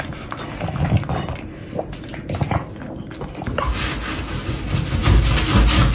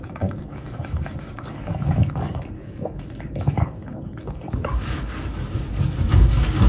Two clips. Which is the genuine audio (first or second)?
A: first